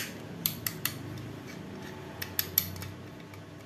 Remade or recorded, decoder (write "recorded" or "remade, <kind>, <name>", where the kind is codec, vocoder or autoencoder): recorded